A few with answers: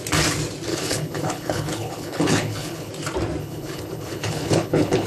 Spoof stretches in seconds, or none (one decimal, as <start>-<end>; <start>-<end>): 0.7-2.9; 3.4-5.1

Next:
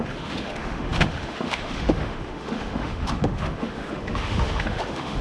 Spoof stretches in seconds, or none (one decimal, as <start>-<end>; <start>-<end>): 0.0-5.2

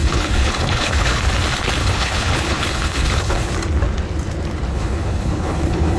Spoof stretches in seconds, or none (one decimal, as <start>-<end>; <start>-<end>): 0.0-1.2; 1.8-3.5; 4.7-6.0